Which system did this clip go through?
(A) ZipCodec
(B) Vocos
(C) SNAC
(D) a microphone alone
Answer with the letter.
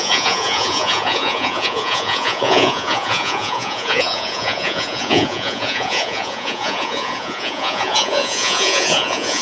B